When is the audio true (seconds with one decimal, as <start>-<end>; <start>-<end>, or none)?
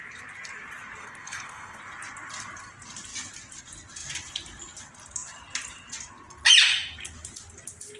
0.0-1.0; 1.8-8.0